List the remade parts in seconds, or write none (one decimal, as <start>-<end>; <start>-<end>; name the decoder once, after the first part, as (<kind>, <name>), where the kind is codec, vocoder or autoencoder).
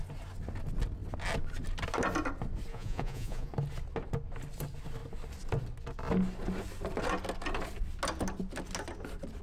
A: 2.7-3.5 (vocoder, Vocos)